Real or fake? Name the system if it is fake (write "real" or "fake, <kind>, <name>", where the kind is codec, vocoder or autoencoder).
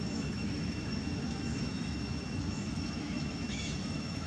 fake, autoencoder, DAC-VAE